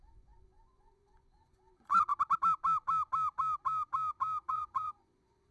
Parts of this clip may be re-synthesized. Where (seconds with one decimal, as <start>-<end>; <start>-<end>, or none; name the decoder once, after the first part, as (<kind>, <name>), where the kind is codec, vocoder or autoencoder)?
0.0-2.1 (vocoder, Vocos); 4.5-5.5